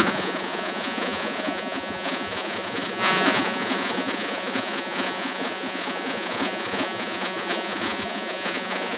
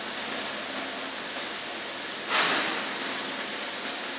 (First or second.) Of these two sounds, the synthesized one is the first